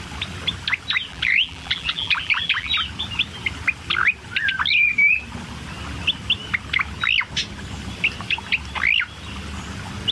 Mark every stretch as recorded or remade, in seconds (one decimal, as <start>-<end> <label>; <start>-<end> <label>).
0.0-1.1 recorded; 1.1-2.7 remade; 2.7-10.1 recorded